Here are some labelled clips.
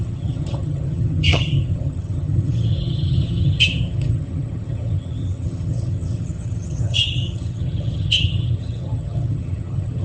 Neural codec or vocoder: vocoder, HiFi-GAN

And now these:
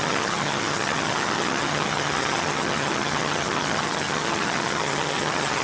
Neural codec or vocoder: vocoder, HiFi-GAN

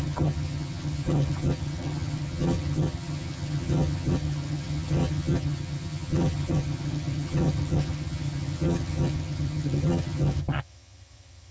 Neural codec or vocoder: vocoder, HiFi-GAN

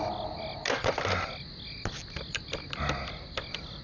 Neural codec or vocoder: none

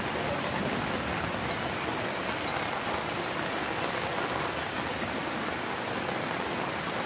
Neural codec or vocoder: none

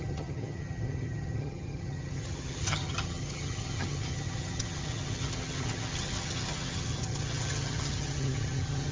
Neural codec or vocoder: vocoder, HiFi-GAN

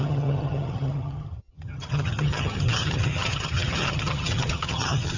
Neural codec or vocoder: vocoder, HiFi-GAN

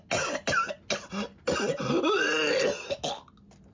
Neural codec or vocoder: none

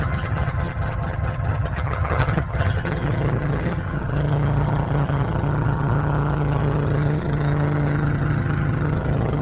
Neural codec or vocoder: vocoder, HiFi-GAN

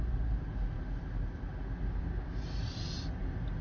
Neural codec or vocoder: none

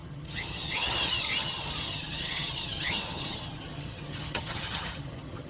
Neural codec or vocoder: vocoder, HiFi-GAN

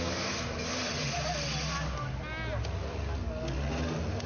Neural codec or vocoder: none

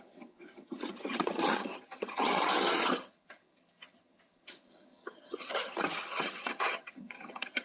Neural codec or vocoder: vocoder, HiFi-GAN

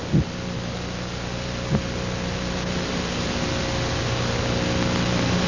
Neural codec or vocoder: none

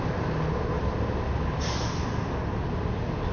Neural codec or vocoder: none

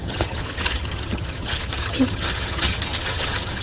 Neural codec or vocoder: vocoder, HiFi-GAN